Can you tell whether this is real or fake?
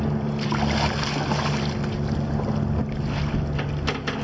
real